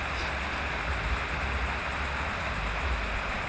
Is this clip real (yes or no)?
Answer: yes